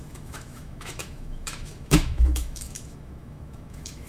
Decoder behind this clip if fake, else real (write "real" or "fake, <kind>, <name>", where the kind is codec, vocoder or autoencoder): fake, autoencoder, DAC-VAE